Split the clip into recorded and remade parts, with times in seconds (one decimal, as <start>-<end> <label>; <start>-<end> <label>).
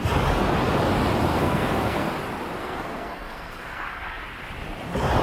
0.0-1.3 recorded; 1.3-2.1 remade; 2.1-2.6 recorded; 2.6-4.2 remade; 4.2-5.2 recorded